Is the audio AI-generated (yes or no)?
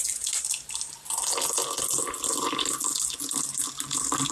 no